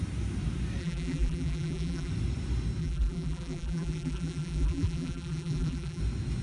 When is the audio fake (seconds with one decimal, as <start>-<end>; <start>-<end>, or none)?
0.8-2.1; 2.8-6.0